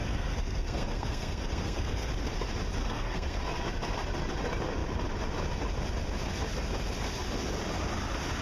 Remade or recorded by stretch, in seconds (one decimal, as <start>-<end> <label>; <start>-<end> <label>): 0.0-2.1 remade; 2.1-2.8 recorded; 2.8-3.4 remade; 3.4-8.4 recorded